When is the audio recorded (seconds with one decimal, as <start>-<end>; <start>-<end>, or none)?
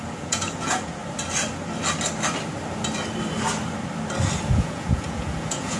1.0-4.5